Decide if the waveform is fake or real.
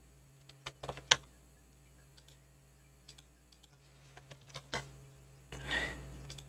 real